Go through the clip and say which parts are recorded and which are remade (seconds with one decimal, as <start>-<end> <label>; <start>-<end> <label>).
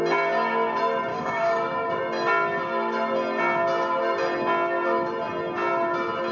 0.0-1.1 recorded; 1.1-2.0 remade; 2.0-6.3 recorded